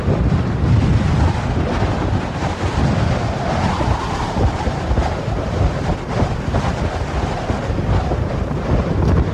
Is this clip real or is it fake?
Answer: real